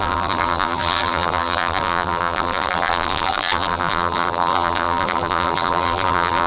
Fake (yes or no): yes